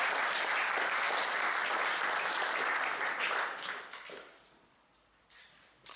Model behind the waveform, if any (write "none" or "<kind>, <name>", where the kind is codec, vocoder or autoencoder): none